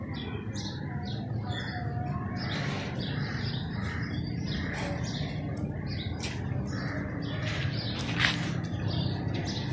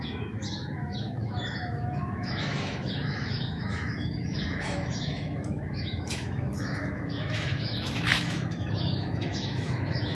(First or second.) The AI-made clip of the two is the second